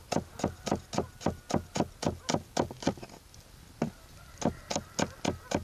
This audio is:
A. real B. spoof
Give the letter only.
A